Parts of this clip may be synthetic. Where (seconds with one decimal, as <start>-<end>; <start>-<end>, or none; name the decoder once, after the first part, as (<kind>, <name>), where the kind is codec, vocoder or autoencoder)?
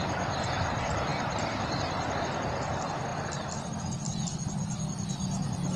none